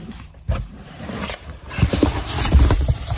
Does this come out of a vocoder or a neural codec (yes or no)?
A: yes